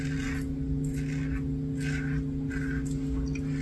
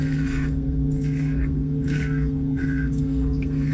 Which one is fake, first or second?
second